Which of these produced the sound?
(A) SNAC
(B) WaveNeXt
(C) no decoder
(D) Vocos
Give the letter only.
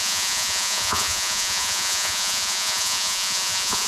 D